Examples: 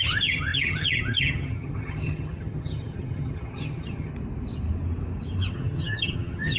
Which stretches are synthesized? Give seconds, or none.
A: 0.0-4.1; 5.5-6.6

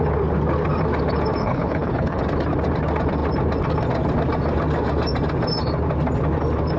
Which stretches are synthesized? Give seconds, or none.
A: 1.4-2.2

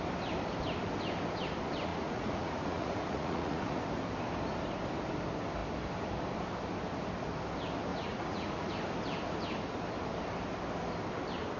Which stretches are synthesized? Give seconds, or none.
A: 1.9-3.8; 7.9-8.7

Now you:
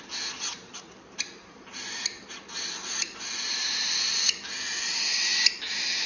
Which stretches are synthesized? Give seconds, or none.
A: 0.5-4.2

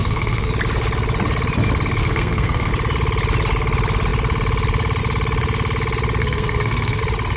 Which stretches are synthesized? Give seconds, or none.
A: 0.0-0.5; 2.0-2.7; 6.2-7.0

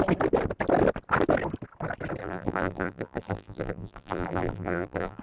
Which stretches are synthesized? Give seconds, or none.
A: 2.2-5.2